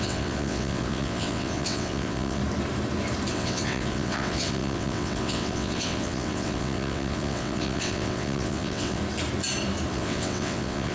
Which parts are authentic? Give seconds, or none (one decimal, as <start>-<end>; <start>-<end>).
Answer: 2.4-3.3; 9.0-9.9